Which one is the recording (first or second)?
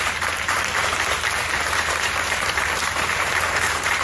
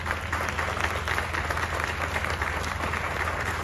second